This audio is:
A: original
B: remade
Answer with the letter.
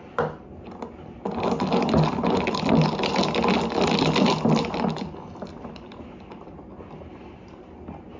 A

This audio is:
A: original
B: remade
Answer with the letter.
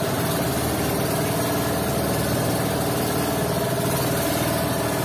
A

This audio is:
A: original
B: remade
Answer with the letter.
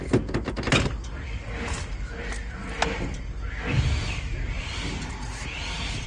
A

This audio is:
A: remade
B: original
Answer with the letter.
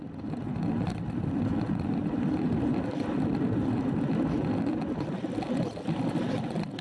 B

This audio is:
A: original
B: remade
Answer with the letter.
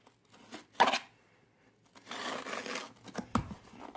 A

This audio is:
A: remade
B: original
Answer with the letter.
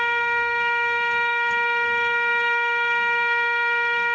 A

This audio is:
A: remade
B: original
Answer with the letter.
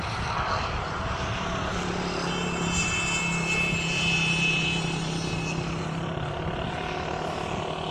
B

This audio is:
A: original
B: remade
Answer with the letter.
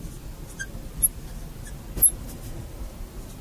A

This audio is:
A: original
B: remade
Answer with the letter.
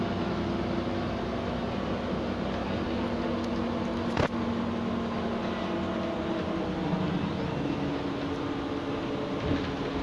A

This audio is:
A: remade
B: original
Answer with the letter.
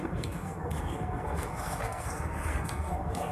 A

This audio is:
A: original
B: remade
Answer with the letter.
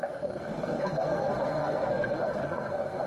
B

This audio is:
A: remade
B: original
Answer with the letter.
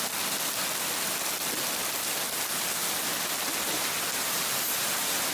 B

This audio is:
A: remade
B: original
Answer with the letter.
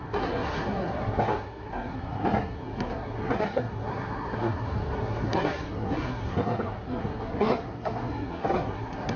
A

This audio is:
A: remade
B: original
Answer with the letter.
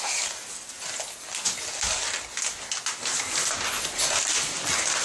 B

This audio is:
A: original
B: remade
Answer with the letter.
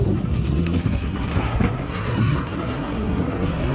B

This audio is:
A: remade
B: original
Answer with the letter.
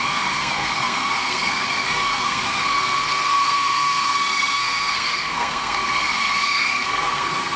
A